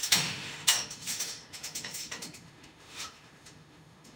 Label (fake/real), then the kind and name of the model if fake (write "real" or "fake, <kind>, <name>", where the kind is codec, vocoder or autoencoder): fake, autoencoder, DAC-VAE